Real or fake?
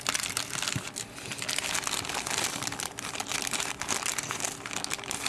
real